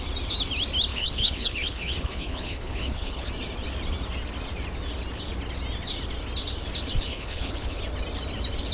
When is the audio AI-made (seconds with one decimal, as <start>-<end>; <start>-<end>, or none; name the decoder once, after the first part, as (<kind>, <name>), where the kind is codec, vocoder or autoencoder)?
0.9-3.3 (codec, HILCodec); 7.1-7.8